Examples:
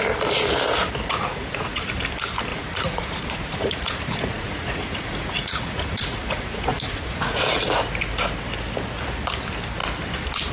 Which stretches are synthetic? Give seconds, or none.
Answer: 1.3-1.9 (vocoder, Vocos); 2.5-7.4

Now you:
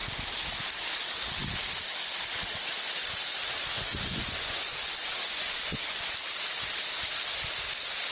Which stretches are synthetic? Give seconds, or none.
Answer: 3.9-6.0 (vocoder, Vocos)

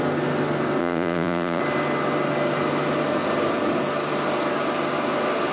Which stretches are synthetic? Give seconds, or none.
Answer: 0.8-1.6 (vocoder, Vocos)

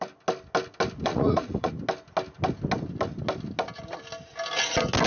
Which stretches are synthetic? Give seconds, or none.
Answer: 1.1-1.7 (vocoder, Vocos)